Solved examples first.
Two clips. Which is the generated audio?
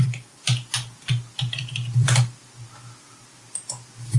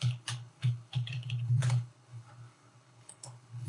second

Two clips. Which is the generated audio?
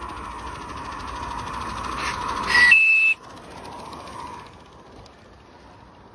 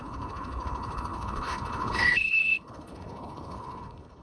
second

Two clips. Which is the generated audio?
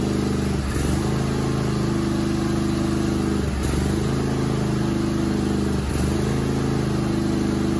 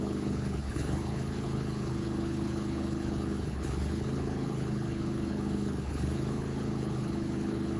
second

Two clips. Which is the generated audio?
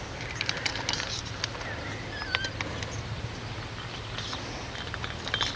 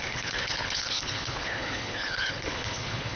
second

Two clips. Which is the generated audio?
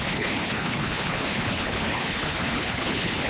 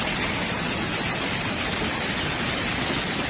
first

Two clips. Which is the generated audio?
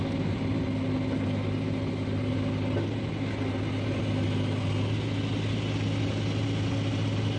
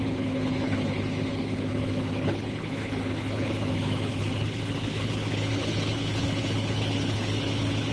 second